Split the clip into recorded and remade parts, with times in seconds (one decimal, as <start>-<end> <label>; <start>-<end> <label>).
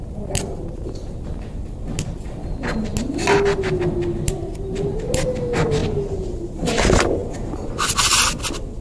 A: 0.0-8.8 recorded